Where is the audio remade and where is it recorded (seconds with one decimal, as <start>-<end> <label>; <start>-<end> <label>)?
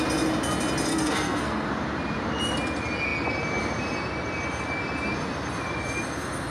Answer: 0.0-0.9 recorded; 0.9-1.7 remade; 1.7-6.5 recorded